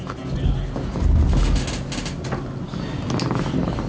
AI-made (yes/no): no